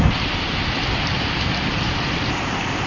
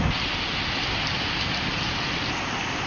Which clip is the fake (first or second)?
first